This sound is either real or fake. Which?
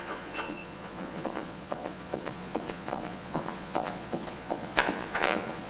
fake